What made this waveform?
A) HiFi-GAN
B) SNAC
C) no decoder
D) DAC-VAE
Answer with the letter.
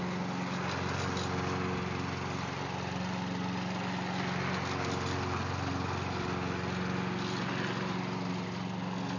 C